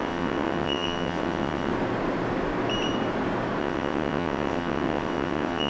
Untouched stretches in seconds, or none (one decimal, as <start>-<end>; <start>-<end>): 1.7-3.6